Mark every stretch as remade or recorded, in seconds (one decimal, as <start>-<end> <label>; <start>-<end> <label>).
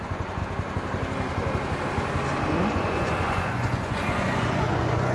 0.0-0.4 remade; 0.4-2.7 recorded; 2.7-5.1 remade